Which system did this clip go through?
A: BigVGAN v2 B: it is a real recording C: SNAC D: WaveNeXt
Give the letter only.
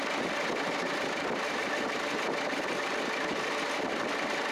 B